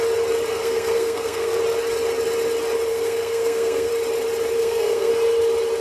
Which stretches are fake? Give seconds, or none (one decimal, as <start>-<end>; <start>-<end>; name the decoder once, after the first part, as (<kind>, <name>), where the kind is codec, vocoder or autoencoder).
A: 0.5-1.6 (codec, SNAC); 2.9-3.9; 4.6-5.1